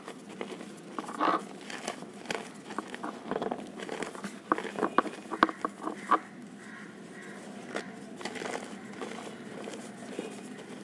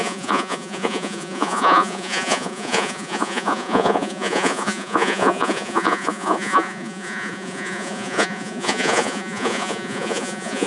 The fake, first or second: second